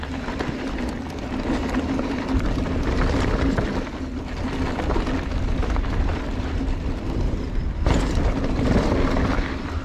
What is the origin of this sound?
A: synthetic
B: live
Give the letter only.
B